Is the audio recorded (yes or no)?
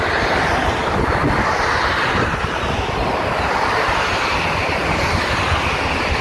yes